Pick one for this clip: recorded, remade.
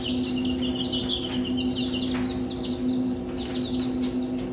recorded